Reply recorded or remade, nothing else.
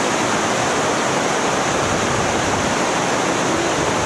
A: recorded